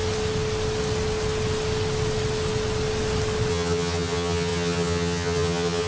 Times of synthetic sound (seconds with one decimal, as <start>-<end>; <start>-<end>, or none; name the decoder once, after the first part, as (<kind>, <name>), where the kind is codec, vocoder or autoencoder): 3.5-5.9 (vocoder, HiFi-GAN)